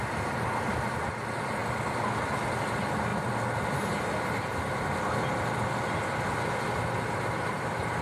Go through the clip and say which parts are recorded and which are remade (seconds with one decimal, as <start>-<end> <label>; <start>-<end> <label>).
0.0-3.1 remade; 3.1-7.5 recorded; 7.5-8.0 remade